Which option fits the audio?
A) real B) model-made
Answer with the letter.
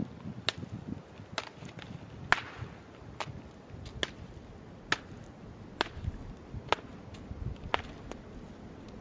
A